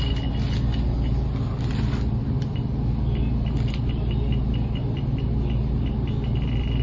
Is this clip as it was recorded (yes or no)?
yes